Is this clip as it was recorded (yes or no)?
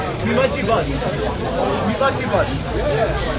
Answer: yes